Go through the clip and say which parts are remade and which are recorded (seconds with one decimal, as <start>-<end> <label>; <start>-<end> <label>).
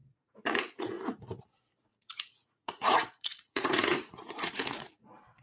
0.0-1.4 remade; 1.4-1.9 recorded; 1.9-5.4 remade